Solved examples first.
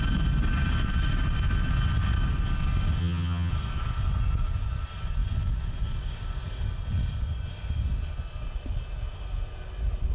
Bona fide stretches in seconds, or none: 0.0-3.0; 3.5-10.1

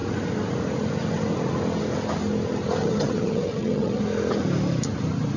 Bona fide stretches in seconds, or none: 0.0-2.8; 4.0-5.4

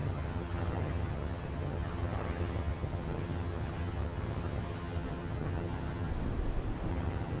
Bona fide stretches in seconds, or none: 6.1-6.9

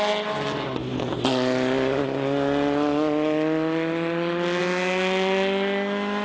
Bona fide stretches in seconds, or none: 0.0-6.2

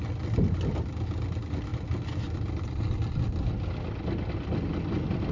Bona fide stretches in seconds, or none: 0.0-5.3

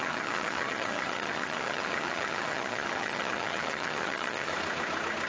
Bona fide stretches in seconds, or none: 4.5-5.3

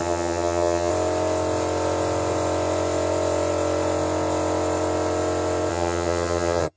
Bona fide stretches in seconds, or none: 0.9-5.7